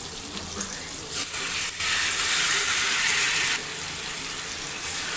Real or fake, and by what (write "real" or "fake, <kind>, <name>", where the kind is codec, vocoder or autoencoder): real